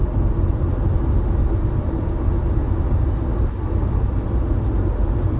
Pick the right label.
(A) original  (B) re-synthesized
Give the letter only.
A